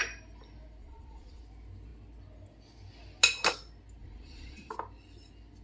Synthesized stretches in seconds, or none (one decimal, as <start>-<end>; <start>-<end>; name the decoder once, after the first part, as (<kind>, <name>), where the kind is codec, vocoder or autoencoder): 0.8-1.4 (vocoder, Vocos); 4.0-4.7